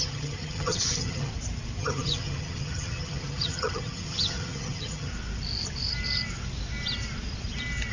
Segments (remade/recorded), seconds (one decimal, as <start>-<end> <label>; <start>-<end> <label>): 0.0-1.3 remade; 1.3-1.8 recorded; 1.8-5.1 remade; 5.1-7.9 recorded